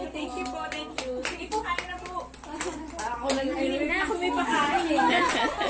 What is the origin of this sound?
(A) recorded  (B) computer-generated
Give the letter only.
A